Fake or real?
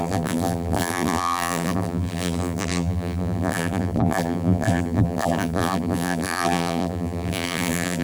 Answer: fake